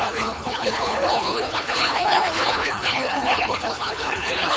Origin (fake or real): fake